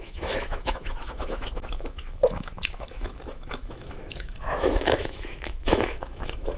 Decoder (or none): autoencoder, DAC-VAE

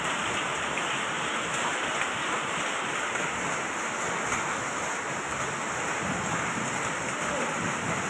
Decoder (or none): none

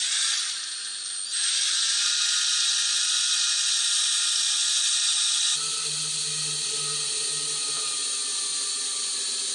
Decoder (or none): none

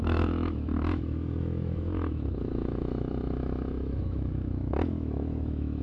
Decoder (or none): autoencoder, DAC-VAE